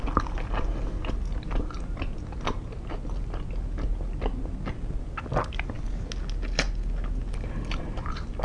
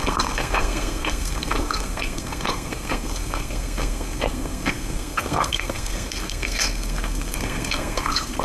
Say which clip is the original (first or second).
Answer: first